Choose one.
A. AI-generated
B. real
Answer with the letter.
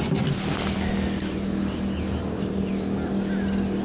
B